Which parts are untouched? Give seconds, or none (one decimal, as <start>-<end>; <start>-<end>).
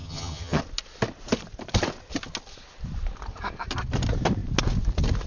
0.6-5.3